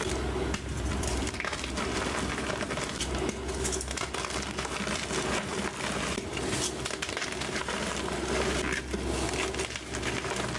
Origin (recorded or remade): recorded